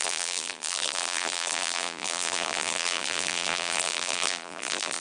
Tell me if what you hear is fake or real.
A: fake